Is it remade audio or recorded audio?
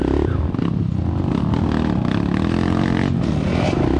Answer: recorded